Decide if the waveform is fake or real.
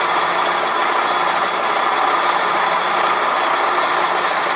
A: fake